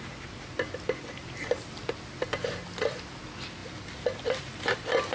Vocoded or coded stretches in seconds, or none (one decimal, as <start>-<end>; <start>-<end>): none